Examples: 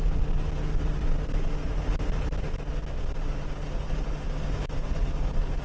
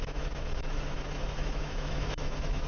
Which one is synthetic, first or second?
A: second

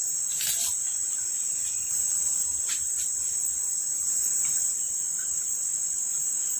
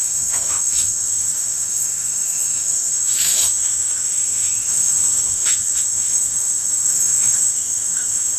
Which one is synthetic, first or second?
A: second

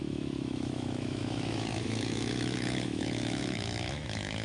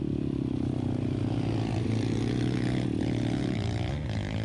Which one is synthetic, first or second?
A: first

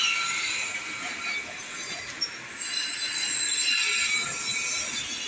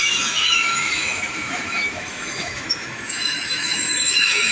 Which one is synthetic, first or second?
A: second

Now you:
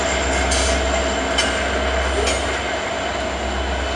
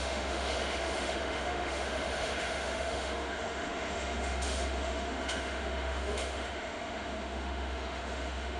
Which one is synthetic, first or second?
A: second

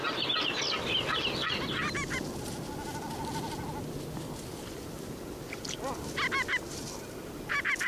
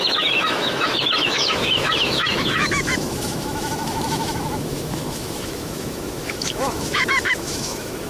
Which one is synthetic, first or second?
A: second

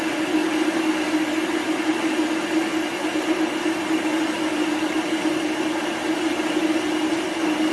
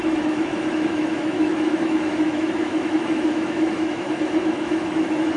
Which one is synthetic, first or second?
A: second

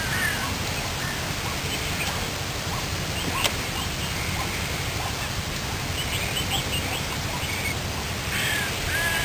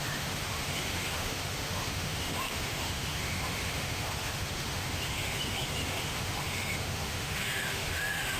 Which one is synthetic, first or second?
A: second